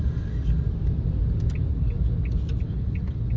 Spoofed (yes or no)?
no